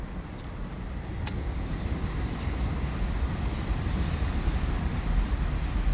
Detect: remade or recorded recorded